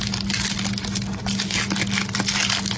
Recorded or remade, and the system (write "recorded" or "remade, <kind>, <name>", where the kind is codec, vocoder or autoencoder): recorded